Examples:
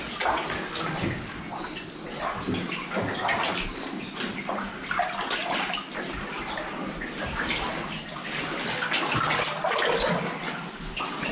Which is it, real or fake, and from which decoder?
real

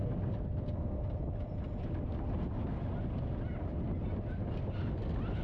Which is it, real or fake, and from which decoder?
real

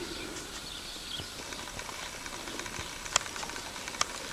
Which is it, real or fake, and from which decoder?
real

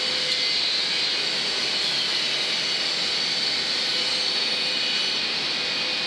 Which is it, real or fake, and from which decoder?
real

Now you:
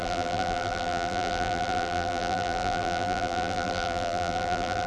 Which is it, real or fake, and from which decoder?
fake, vocoder, BigVGAN v2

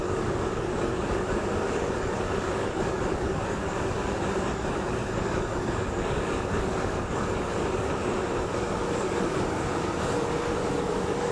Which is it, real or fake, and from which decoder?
fake, codec, DAC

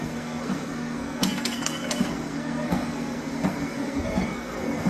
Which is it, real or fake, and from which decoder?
fake, codec, SNAC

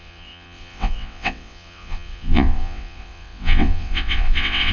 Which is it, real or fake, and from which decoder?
fake, vocoder, WaveNeXt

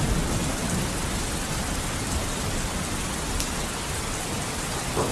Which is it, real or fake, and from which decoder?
real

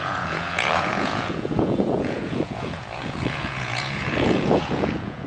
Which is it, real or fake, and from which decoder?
fake, vocoder, Vocos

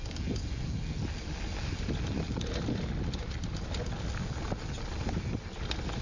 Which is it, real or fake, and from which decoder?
real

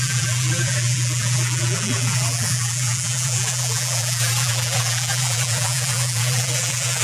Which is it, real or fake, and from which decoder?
fake, vocoder, BigVGAN v2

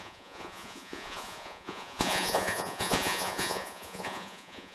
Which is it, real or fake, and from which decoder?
fake, vocoder, Vocos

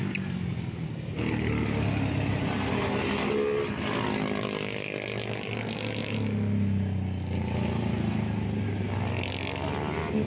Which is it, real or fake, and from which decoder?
real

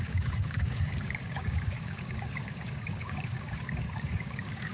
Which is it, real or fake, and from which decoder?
fake, codec, DAC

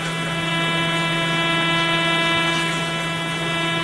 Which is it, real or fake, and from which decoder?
real